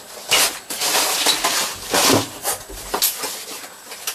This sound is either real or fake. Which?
real